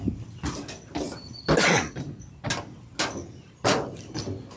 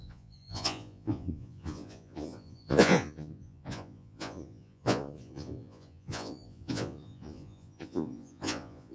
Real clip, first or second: first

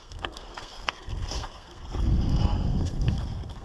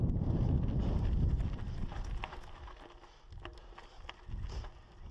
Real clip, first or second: second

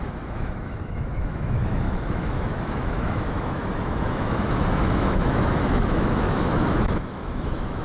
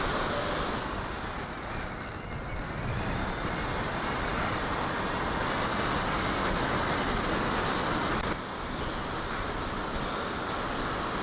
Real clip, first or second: second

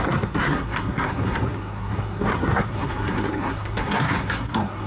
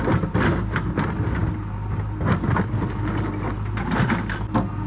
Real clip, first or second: second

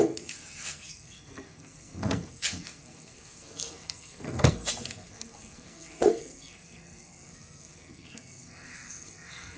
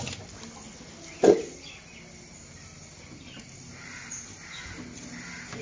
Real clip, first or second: second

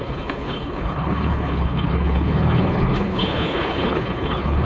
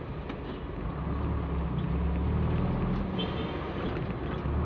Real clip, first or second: second